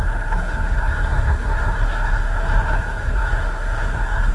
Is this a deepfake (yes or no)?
yes